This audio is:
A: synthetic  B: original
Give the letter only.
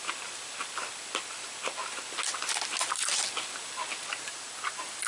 B